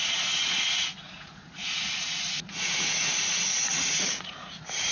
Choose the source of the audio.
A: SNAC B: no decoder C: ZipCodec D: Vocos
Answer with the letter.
D